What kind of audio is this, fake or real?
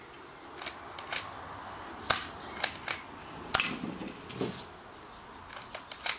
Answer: real